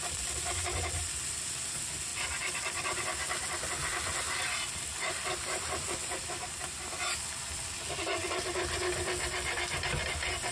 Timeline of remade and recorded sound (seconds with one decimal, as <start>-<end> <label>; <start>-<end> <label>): 0.0-10.5 recorded